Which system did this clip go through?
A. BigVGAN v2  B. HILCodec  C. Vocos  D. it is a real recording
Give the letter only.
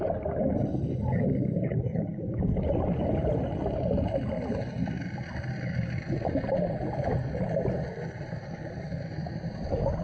D